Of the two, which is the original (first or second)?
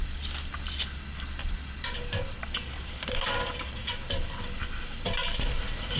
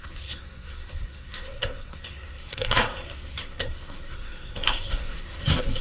first